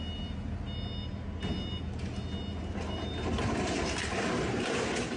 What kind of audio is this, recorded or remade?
recorded